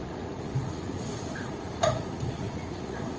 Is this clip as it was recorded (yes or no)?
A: no